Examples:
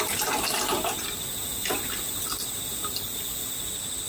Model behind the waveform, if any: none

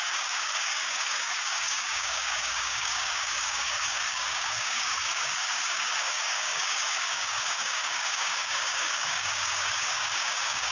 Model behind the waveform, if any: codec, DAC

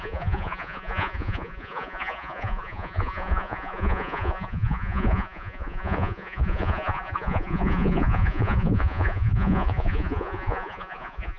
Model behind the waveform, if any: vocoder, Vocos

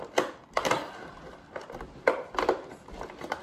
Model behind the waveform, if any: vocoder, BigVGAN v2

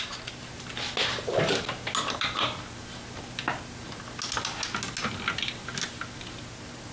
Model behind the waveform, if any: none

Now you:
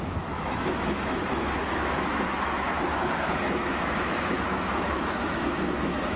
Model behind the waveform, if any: autoencoder, DAC-VAE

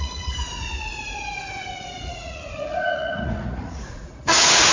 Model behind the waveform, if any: vocoder, Vocos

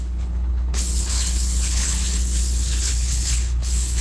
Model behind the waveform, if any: codec, HILCodec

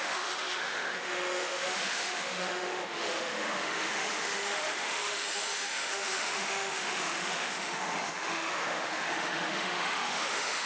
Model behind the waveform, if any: autoencoder, DAC-VAE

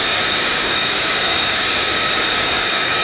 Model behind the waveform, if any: codec, DAC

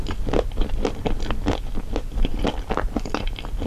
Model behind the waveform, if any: none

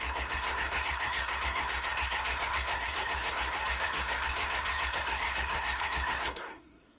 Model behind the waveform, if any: codec, SNAC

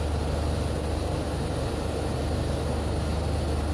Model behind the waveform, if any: none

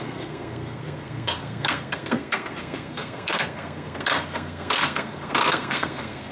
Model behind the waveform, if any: codec, SNAC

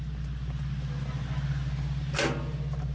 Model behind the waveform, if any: none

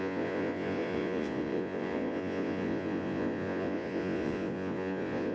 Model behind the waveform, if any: vocoder, Vocos